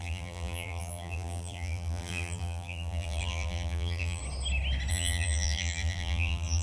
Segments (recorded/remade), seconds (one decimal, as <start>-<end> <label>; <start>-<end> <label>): 0.0-4.2 remade; 4.2-4.9 recorded; 4.9-6.6 remade